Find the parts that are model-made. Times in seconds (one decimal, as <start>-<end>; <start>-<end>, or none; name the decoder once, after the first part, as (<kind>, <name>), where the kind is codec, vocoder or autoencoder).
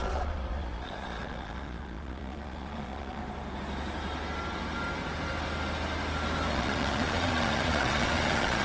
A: 0.0-3.2 (vocoder, Vocos); 6.5-8.6